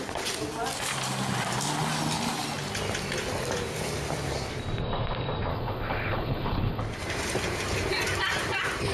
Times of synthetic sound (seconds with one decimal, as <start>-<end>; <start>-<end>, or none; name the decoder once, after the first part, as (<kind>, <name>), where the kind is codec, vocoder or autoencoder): 5.5-6.8 (codec, HILCodec)